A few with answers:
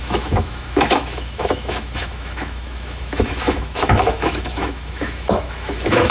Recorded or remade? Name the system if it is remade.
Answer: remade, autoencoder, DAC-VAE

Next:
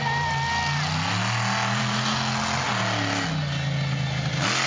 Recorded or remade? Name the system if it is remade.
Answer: recorded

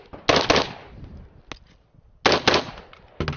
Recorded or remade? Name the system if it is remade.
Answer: recorded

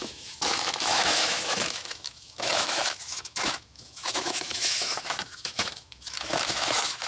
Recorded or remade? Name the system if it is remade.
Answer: remade, autoencoder, DAC-VAE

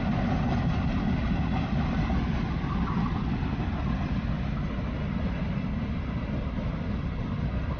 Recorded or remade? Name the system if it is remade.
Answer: recorded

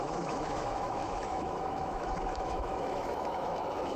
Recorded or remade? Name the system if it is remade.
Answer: remade, autoencoder, DAC-VAE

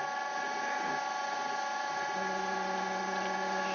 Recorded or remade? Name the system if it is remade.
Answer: recorded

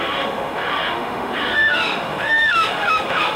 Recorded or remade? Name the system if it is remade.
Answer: remade, autoencoder, DAC-VAE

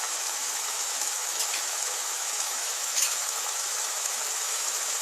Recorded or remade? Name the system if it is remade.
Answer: remade, autoencoder, DAC-VAE